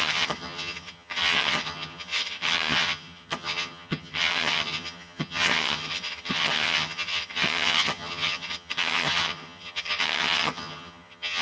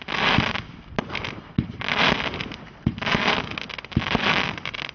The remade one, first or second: first